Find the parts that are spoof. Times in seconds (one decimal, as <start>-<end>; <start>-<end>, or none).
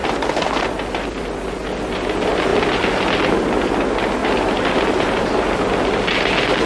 0.0-0.6; 4.2-5.5